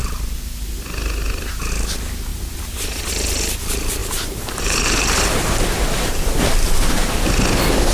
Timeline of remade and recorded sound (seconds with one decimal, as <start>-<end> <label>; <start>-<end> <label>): 0.0-4.0 recorded; 4.0-6.4 remade; 6.4-7.9 recorded